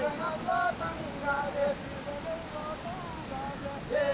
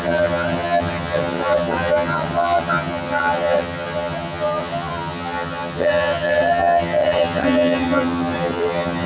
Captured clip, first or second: first